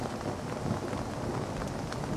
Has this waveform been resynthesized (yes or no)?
no